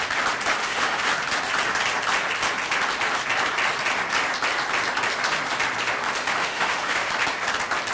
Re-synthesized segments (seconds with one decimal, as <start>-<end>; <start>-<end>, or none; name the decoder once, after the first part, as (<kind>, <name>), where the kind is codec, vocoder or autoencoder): 0.6-1.1 (autoencoder, DAC-VAE); 6.3-7.1